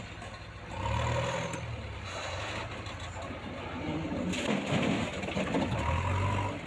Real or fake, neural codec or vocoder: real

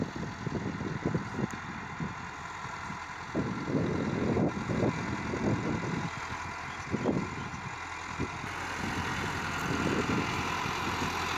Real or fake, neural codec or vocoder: real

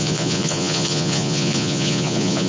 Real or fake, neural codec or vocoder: fake, vocoder, Vocos